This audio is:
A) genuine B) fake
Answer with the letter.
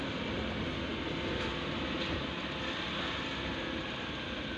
A